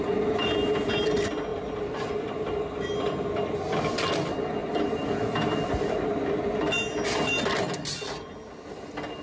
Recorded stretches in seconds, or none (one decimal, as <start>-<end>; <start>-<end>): 0.0-1.5; 2.1-4.6; 5.7-9.2